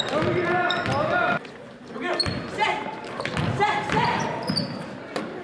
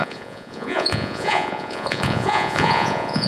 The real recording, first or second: first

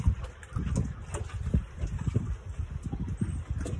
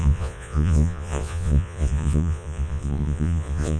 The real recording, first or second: first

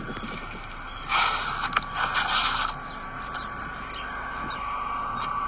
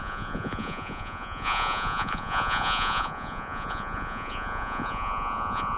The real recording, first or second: first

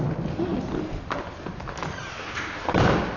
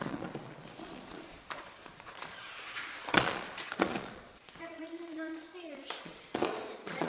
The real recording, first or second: first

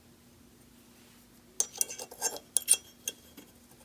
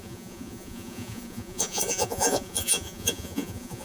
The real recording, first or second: first